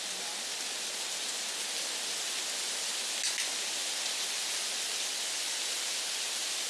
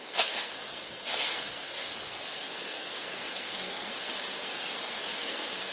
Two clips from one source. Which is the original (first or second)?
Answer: first